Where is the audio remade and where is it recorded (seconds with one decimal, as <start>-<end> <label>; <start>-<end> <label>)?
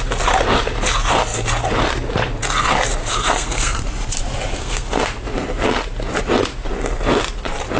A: 0.0-3.0 recorded; 3.0-3.8 remade; 3.8-4.5 recorded; 4.5-5.0 remade; 5.0-7.8 recorded